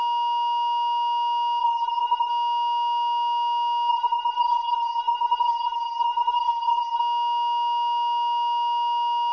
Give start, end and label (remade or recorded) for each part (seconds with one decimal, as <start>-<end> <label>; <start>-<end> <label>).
0.0-1.6 recorded; 1.6-2.3 remade; 2.3-3.9 recorded; 3.9-7.0 remade; 7.0-9.3 recorded